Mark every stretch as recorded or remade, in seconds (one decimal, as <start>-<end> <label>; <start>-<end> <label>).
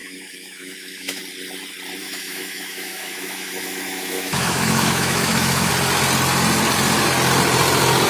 0.0-1.2 remade; 1.2-2.0 recorded; 2.0-5.7 remade; 5.7-8.1 recorded